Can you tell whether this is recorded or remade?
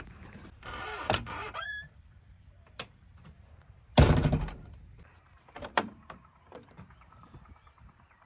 remade